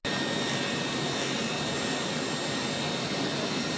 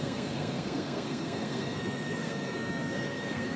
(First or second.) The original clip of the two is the first